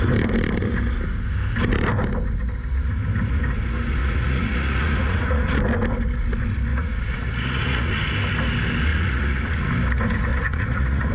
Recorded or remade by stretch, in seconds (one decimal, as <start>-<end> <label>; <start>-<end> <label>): 0.0-4.0 recorded; 4.0-5.6 remade; 5.6-6.7 recorded; 6.7-7.9 remade; 7.9-8.9 recorded; 8.9-9.7 remade; 9.7-10.3 recorded; 10.3-11.1 remade